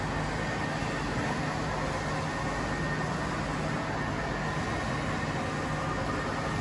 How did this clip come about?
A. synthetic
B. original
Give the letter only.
B